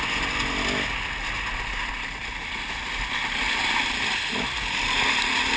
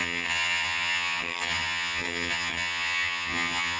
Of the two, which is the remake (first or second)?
second